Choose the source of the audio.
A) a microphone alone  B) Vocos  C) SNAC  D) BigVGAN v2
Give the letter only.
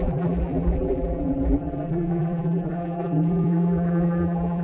D